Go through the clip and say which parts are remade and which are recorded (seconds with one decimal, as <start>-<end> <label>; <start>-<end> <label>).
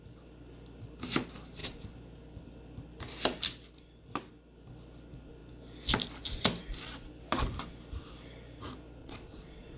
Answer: 0.0-9.0 recorded; 9.0-9.8 remade